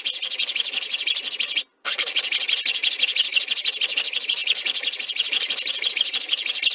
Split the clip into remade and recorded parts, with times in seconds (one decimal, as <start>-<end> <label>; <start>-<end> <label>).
0.0-6.7 recorded